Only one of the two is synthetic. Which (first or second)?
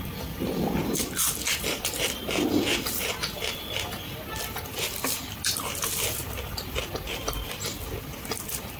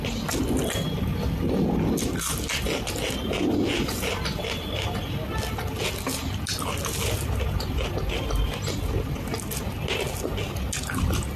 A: first